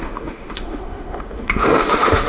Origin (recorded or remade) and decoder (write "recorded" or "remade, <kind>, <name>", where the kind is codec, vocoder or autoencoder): remade, autoencoder, DAC-VAE